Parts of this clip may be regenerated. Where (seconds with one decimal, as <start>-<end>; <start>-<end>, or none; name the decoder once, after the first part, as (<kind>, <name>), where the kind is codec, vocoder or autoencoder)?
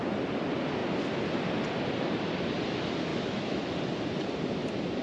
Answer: 3.1-3.7 (autoencoder, DAC-VAE)